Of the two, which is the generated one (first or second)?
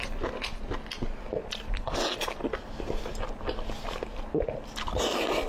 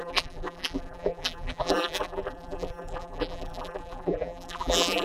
second